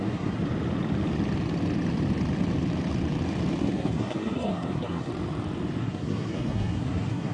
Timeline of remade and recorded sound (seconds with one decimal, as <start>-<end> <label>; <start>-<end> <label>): 0.0-0.4 remade; 0.4-3.6 recorded; 3.6-5.1 remade; 5.1-5.8 recorded; 5.8-7.3 remade